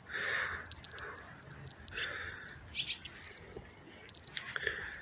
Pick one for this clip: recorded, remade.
recorded